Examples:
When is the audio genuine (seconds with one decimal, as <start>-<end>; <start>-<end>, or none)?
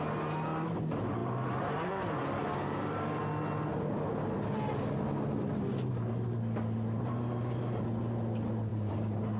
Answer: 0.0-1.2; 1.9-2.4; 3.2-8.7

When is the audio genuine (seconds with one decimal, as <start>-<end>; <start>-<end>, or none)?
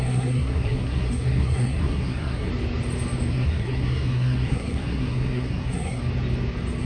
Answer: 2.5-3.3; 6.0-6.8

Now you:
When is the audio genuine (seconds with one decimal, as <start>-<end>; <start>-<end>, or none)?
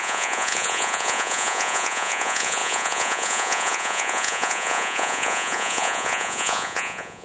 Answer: none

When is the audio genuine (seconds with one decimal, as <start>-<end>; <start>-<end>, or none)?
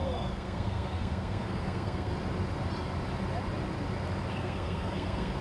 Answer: 2.1-4.3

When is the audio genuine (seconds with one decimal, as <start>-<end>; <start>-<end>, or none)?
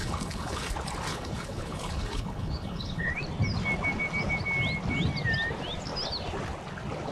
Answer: 0.7-1.1; 3.1-7.1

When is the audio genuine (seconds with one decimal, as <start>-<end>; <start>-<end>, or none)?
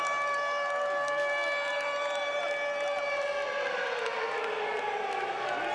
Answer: 0.0-5.7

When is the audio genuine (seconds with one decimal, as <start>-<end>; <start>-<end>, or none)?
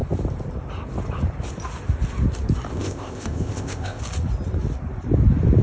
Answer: 0.0-2.7; 4.0-5.6